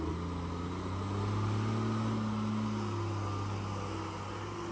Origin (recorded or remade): recorded